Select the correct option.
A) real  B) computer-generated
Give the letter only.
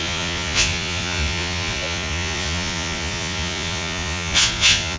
B